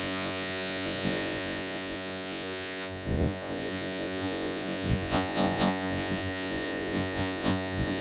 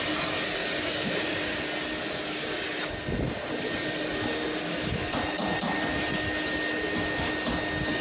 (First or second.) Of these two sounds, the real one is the second